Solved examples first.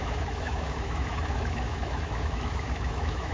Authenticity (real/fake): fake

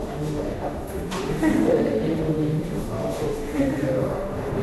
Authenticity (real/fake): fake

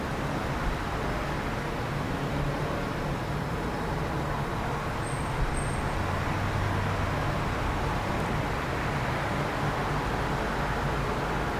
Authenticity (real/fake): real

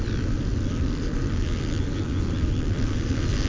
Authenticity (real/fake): real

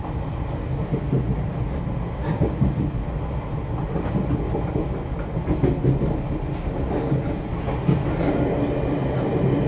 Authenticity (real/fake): real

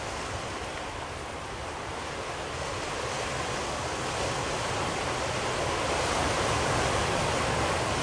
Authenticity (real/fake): real